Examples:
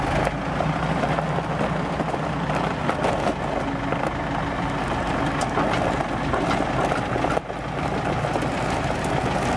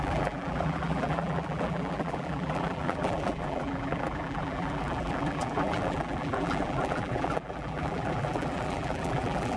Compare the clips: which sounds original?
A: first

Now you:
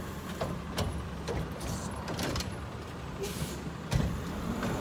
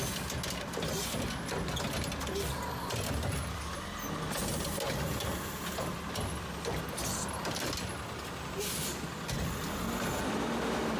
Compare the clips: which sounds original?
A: second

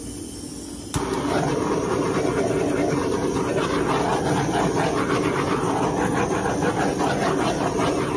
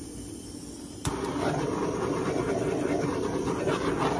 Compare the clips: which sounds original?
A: first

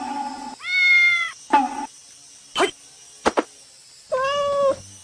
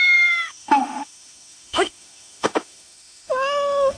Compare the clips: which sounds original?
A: first